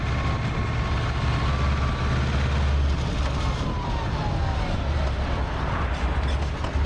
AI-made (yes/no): no